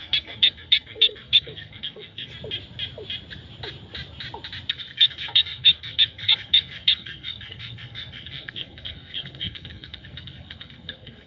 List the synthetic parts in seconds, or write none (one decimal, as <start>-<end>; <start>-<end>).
0.0-2.3; 4.7-11.3